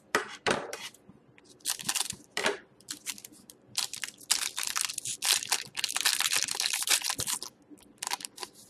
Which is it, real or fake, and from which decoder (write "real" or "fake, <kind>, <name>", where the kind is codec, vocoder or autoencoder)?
fake, vocoder, BigVGAN v2